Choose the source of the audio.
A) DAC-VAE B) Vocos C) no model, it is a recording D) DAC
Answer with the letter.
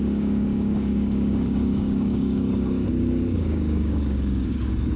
D